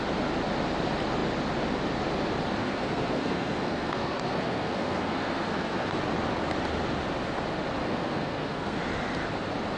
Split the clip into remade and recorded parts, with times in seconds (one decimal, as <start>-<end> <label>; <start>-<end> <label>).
0.0-2.6 recorded; 2.6-6.0 remade; 6.0-7.8 recorded; 7.8-8.8 remade; 8.8-9.8 recorded